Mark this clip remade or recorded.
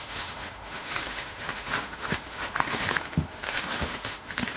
remade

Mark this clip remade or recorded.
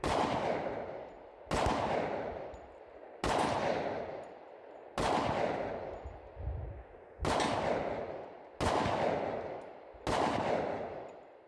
recorded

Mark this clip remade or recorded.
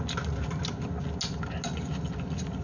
recorded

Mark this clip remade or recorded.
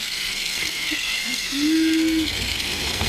remade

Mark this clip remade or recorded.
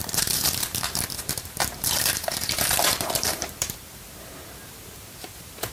remade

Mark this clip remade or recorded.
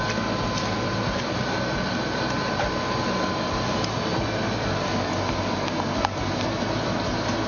recorded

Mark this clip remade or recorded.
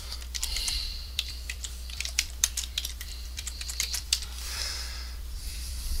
remade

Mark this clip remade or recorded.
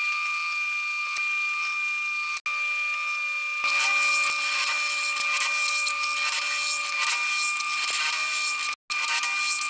recorded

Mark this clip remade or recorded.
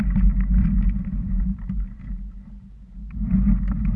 recorded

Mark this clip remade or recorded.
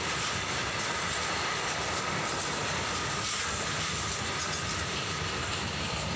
recorded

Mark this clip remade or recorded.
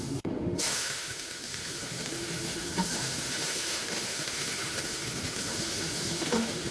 remade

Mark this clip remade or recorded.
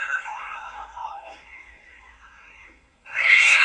remade